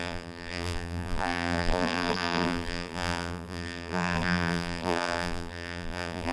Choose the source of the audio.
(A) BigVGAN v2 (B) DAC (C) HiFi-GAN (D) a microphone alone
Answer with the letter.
A